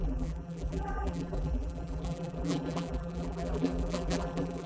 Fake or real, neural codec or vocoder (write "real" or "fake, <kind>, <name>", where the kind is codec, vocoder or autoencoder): fake, vocoder, BigVGAN v2